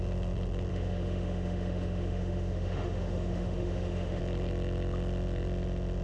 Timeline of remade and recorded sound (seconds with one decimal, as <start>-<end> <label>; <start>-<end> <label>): 0.0-0.7 recorded; 0.7-4.2 remade; 4.2-6.0 recorded